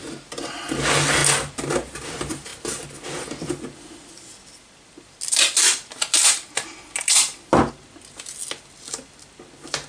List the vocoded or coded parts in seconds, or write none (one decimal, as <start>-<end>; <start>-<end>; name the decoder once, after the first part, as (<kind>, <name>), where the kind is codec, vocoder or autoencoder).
none